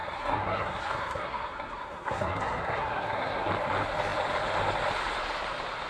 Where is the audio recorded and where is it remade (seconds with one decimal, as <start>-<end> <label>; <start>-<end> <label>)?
0.0-3.5 remade; 3.5-5.9 recorded